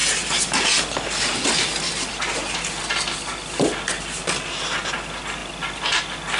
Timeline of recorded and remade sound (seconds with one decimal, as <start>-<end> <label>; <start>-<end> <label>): 0.0-5.4 recorded; 5.4-6.0 remade; 6.0-6.4 recorded